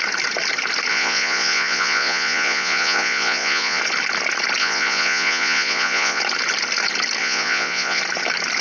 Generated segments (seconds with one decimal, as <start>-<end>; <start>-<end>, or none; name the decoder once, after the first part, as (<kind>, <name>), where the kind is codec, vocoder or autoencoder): 0.9-3.8 (vocoder, Vocos); 4.6-6.2; 7.2-8.0